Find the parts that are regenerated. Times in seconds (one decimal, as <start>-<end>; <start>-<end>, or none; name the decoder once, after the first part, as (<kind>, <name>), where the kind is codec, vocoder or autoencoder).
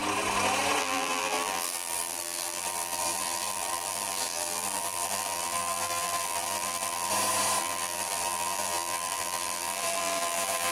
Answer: 0.8-7.1 (vocoder, BigVGAN v2); 7.6-10.7